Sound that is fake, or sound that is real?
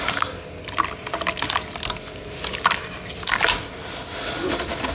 real